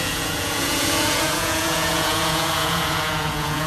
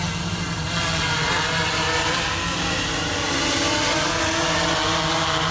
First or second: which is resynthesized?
first